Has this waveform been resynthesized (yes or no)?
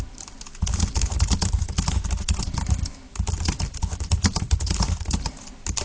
no